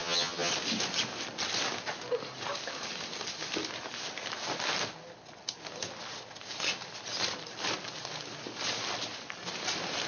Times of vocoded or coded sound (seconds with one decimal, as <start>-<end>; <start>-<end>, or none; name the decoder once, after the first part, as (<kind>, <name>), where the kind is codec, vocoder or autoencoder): 0.0-0.5 (vocoder, HiFi-GAN)